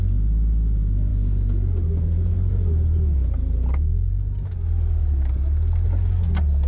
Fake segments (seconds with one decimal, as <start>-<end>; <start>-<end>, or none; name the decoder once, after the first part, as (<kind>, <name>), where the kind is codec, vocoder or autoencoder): none